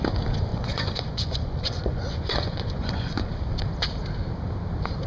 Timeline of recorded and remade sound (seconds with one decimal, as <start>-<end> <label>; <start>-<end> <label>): 0.0-0.5 recorded; 0.5-3.3 remade; 3.3-5.1 recorded